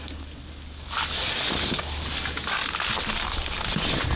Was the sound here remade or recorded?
recorded